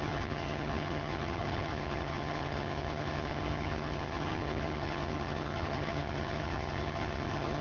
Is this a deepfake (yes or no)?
yes